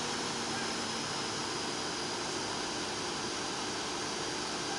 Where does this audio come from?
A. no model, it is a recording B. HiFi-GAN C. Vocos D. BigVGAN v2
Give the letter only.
A